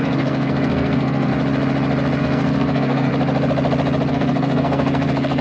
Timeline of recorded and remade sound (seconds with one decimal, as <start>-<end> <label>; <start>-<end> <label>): 0.0-1.3 remade; 1.3-2.2 recorded; 2.2-3.1 remade; 3.1-4.1 recorded; 4.1-5.4 remade